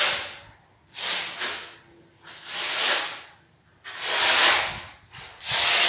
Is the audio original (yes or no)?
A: yes